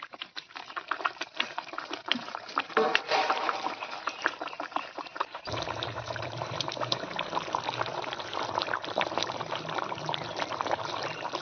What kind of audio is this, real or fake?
fake